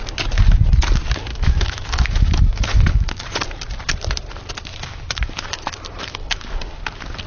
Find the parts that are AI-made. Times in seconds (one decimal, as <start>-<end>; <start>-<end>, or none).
1.3-3.1; 4.7-6.5